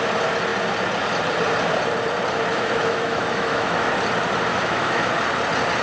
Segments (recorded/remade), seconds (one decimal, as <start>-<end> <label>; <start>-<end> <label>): 0.0-2.5 recorded; 2.5-3.9 remade; 3.9-4.5 recorded; 4.5-5.1 remade; 5.1-5.8 recorded